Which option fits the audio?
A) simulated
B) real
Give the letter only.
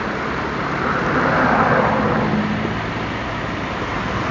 B